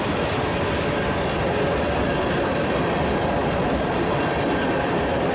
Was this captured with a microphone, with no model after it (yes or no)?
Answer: yes